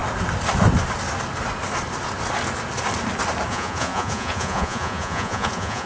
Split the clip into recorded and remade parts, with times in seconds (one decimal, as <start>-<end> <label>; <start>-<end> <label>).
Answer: 0.0-3.5 recorded; 3.5-5.9 remade

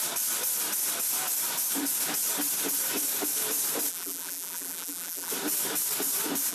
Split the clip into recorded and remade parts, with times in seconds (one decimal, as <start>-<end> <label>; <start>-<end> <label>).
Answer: 0.0-3.9 recorded; 3.9-5.3 remade; 5.3-6.5 recorded

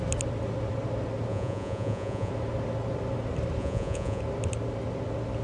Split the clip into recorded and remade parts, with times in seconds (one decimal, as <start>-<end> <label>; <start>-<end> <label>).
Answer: 0.0-1.3 recorded; 1.3-2.3 remade; 2.3-3.6 recorded; 3.6-4.2 remade; 4.2-5.4 recorded

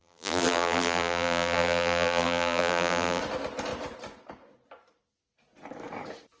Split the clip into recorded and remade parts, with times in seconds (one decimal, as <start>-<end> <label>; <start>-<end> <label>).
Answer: 0.0-3.2 remade; 3.2-6.4 recorded

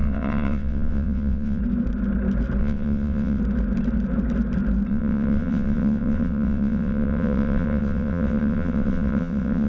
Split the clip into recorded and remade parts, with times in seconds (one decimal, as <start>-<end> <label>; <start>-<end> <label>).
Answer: 0.0-1.6 remade; 1.6-2.6 recorded; 2.6-3.4 remade; 3.4-4.9 recorded; 4.9-9.7 remade